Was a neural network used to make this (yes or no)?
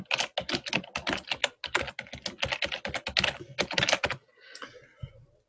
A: no